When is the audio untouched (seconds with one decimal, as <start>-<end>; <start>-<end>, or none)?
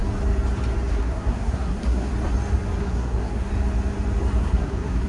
0.0-0.9; 2.1-2.8; 3.5-4.4